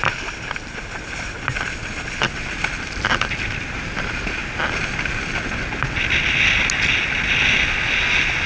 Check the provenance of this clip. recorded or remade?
recorded